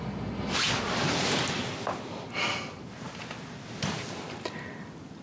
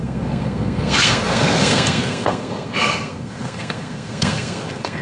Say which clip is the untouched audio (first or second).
first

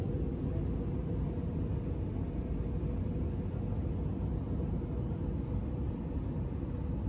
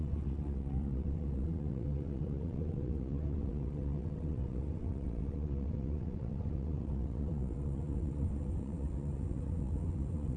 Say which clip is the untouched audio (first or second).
first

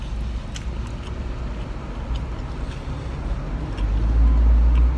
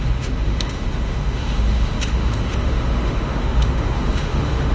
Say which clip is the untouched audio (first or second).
first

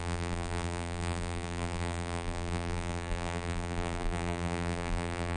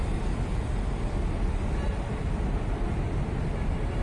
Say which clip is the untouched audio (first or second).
second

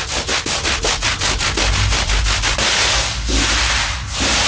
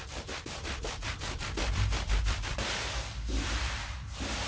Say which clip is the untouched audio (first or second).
first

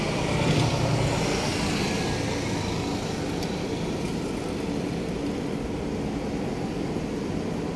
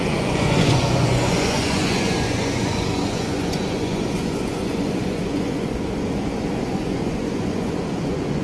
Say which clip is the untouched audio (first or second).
first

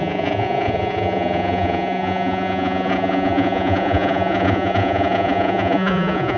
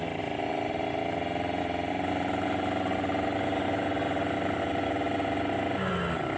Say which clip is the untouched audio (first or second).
second